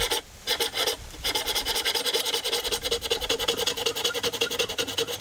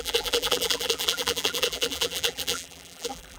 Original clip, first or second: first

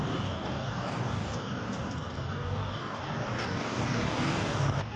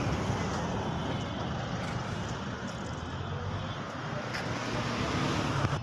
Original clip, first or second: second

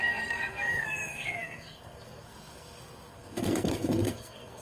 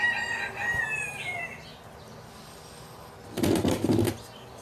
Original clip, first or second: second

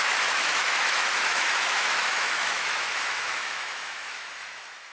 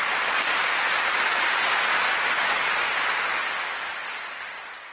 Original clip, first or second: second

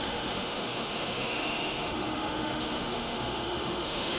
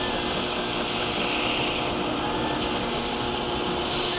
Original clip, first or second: second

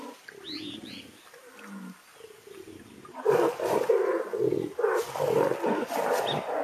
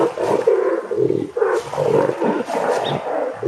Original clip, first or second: first